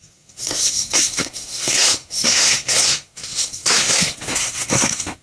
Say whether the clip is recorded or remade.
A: remade